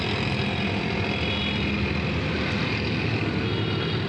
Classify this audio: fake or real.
real